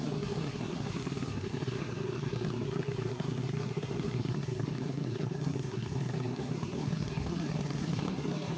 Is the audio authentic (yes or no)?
no